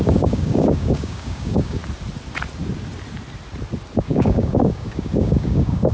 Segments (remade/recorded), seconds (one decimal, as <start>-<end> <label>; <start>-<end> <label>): 0.0-1.8 remade; 1.8-4.0 recorded; 4.0-5.9 remade